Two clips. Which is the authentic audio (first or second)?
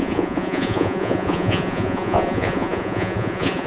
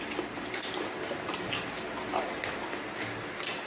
second